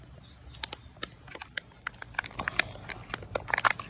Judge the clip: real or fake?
real